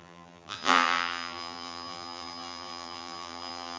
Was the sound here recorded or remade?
remade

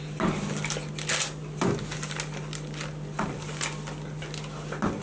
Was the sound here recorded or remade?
recorded